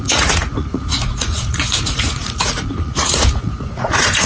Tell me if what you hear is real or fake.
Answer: fake